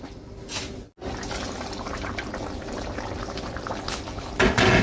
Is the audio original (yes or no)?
yes